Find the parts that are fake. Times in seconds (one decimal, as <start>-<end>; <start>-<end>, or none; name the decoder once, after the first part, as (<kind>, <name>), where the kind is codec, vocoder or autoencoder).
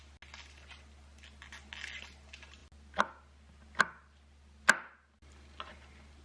none